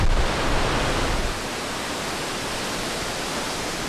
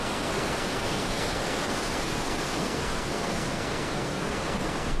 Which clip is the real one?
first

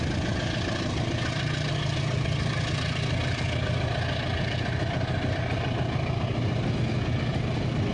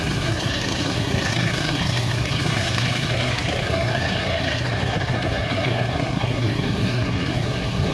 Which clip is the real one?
first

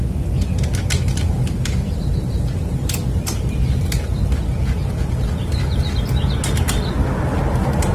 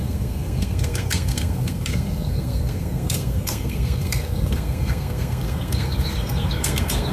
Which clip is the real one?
first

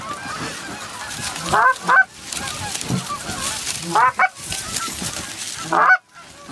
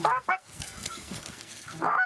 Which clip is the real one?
first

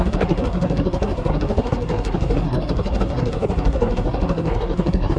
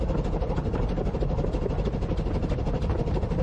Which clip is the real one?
second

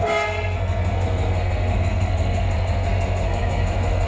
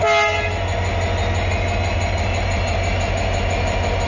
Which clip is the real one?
second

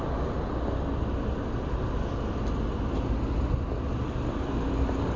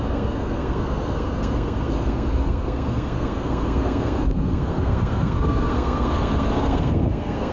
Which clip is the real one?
first